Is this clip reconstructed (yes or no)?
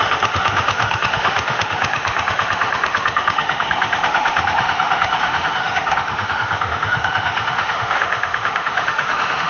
yes